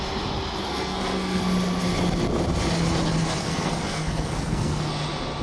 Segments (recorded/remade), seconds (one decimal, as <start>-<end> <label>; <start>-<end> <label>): 0.0-0.6 recorded; 0.6-1.4 remade; 1.4-3.4 recorded; 3.4-4.9 remade; 4.9-5.4 recorded